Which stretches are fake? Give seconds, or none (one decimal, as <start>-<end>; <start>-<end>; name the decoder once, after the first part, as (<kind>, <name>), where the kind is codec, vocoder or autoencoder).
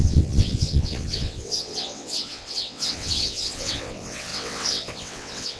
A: 0.0-5.6 (vocoder, WaveNeXt)